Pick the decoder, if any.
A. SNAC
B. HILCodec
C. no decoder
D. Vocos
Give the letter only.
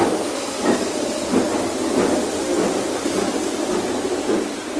C